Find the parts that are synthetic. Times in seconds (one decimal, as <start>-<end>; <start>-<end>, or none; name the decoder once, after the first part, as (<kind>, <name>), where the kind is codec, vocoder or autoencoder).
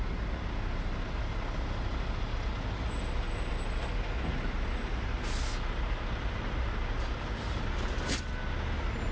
none